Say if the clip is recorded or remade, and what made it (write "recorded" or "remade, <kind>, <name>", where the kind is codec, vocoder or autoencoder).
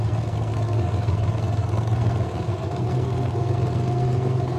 remade, codec, SNAC